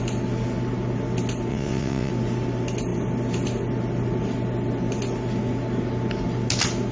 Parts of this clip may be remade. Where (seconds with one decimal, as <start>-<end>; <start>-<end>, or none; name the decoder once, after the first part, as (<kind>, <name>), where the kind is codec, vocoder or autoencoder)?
1.5-2.1 (vocoder, WaveNeXt)